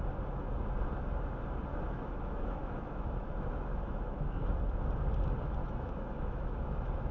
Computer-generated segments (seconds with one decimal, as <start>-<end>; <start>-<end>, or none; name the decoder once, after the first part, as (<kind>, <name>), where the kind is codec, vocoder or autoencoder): 1.7-4.5 (autoencoder, DAC-VAE); 5.6-7.1